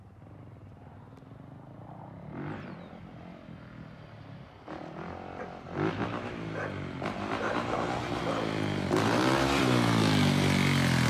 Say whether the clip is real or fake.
real